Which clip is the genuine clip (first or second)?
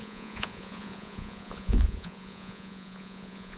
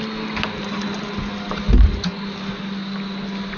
second